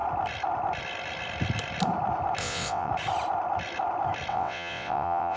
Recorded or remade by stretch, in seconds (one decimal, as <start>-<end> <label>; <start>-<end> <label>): 0.0-2.4 recorded; 2.4-2.9 remade; 2.9-4.3 recorded; 4.3-5.4 remade